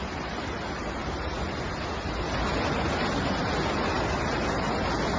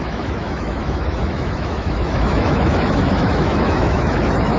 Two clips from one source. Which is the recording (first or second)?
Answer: first